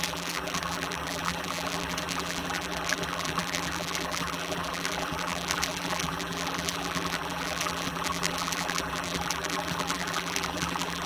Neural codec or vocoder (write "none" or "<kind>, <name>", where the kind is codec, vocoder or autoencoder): vocoder, BigVGAN v2